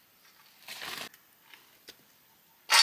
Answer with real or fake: real